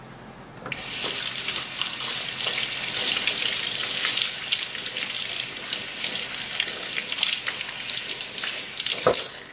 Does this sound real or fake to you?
real